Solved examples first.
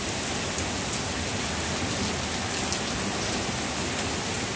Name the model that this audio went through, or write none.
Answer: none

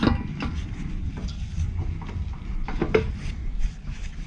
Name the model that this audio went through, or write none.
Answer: none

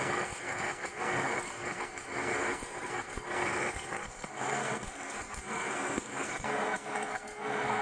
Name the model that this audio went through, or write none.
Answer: codec, SNAC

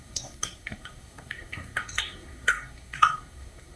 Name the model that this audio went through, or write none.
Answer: codec, SNAC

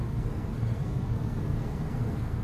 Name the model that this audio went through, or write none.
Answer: codec, SNAC